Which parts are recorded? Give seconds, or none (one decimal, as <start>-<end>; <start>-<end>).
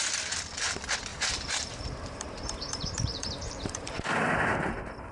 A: 0.0-1.1; 4.2-5.1